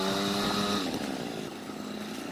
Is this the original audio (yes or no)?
yes